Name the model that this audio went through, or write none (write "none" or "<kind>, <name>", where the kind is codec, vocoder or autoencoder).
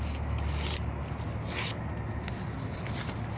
none